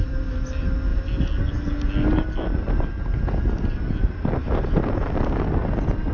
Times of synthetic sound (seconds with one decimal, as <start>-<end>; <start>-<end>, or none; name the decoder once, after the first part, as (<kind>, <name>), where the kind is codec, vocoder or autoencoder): none

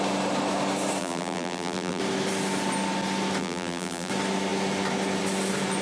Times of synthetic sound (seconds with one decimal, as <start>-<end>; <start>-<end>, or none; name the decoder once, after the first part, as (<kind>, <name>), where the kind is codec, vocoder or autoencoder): 1.0-2.0 (vocoder, BigVGAN v2); 3.4-4.1